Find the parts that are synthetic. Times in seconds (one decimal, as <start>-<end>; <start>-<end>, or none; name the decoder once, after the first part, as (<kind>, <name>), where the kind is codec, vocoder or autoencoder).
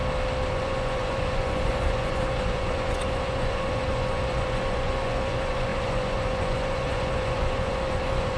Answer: 0.5-8.4 (vocoder, Vocos)